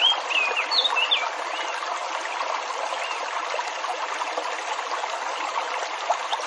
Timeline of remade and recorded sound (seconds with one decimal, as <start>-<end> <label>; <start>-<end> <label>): 0.0-6.5 recorded

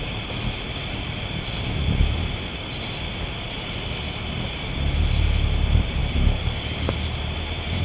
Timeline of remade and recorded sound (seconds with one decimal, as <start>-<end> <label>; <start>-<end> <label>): 0.0-6.0 recorded; 6.0-6.9 remade; 6.9-7.8 recorded

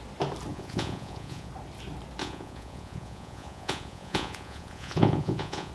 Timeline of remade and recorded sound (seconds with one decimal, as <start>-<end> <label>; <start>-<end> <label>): 0.0-0.5 recorded; 0.5-1.5 remade; 1.5-2.2 recorded; 2.2-5.7 remade

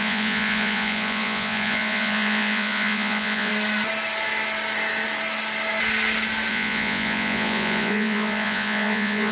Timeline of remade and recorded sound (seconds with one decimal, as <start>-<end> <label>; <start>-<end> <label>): 0.0-3.5 remade; 3.5-6.5 recorded; 6.5-9.3 remade